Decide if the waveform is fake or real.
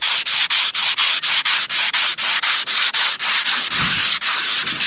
real